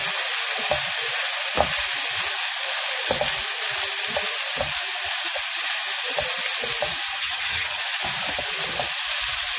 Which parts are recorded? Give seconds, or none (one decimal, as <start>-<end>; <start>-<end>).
0.0-7.1; 7.8-9.6